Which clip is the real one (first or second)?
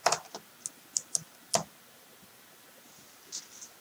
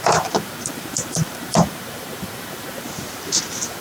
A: first